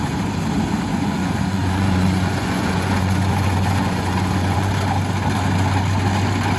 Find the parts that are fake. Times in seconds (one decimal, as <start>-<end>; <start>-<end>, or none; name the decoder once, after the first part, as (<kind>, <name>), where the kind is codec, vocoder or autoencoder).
0.9-4.7 (vocoder, Vocos)